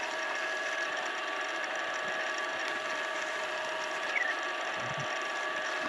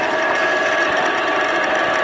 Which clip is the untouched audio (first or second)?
first